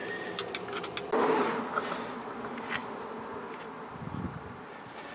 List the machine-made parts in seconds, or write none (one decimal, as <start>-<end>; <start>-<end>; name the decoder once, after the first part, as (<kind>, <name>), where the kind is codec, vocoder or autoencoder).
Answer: none